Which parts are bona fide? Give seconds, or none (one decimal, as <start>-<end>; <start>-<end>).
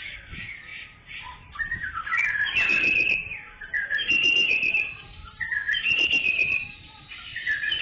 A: 0.7-1.4